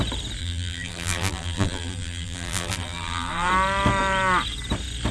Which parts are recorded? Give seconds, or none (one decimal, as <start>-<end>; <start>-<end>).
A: 0.0-0.4; 3.5-5.1